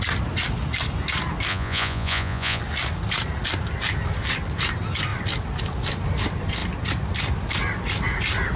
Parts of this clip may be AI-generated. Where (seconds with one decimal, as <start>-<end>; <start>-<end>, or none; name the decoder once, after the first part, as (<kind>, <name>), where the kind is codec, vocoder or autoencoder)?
1.5-2.6 (vocoder, Vocos)